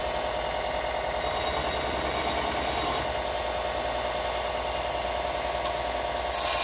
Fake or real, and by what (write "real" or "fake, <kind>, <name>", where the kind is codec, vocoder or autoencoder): real